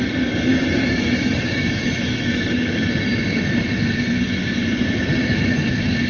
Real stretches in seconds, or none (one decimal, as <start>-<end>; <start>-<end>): 0.0-0.5; 2.8-6.1